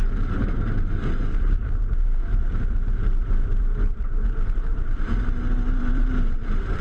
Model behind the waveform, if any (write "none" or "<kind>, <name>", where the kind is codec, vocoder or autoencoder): vocoder, BigVGAN v2